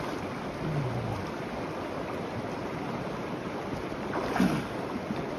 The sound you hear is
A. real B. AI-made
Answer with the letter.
A